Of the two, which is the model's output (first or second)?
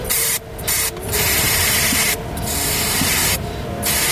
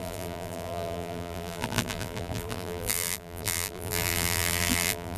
second